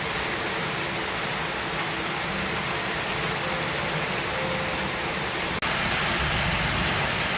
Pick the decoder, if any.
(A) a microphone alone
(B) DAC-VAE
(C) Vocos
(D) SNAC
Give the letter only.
A